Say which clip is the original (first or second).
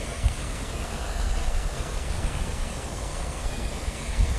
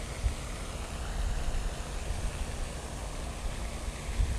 second